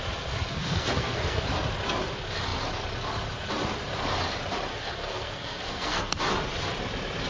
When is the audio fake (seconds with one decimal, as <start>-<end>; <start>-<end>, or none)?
0.5-1.4; 4.7-6.2

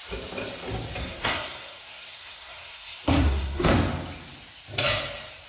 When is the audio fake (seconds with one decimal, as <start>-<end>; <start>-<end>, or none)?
1.0-3.7